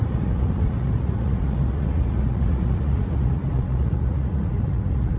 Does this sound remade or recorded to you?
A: remade